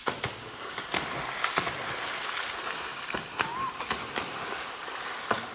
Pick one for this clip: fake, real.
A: real